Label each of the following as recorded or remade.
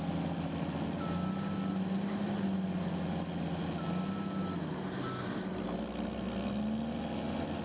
recorded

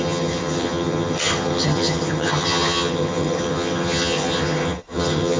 remade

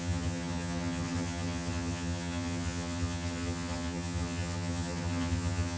remade